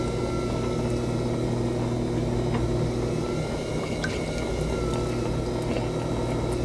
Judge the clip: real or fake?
real